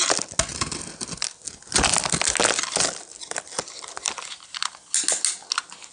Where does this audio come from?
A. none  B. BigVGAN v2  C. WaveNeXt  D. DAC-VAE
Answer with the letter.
A